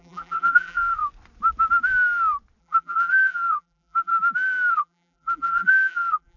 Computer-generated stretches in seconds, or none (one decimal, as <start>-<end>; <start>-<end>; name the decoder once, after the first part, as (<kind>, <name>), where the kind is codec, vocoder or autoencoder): 0.0-1.0 (vocoder, BigVGAN v2); 2.6-4.1; 4.7-6.4